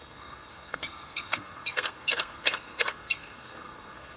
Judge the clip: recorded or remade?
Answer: remade